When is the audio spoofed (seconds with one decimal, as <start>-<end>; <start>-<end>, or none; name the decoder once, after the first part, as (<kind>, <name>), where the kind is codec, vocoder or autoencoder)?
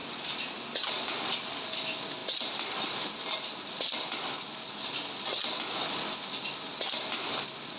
none